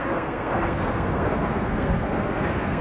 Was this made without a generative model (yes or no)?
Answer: no